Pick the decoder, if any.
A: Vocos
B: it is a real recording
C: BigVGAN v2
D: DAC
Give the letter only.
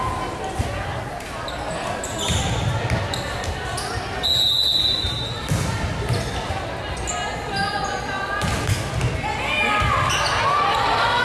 B